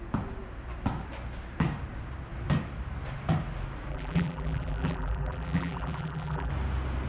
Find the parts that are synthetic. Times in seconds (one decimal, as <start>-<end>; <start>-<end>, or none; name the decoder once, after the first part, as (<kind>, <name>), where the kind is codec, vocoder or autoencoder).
3.9-6.5 (vocoder, BigVGAN v2)